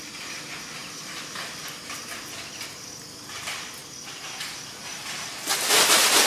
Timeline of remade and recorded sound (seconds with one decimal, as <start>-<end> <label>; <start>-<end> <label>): 0.0-6.3 recorded